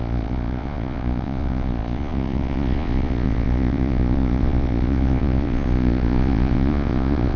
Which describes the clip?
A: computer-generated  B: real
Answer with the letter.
A